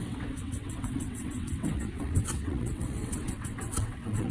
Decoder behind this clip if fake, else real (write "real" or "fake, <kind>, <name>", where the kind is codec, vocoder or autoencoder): fake, vocoder, WaveNeXt